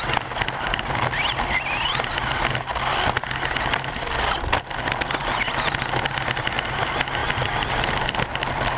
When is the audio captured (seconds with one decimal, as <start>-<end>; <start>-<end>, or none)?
0.0-8.8